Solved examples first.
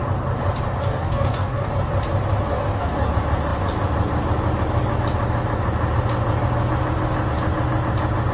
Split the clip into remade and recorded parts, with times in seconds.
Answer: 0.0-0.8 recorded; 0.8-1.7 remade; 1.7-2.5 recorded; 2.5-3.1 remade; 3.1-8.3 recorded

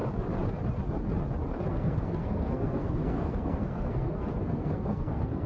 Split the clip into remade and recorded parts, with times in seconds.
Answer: 0.0-1.7 recorded; 1.7-5.5 remade

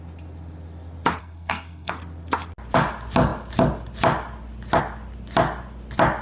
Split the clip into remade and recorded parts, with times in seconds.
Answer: 0.0-1.2 recorded; 1.2-1.9 remade; 1.9-6.2 recorded